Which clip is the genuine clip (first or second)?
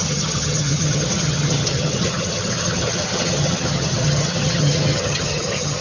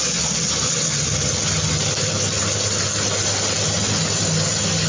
second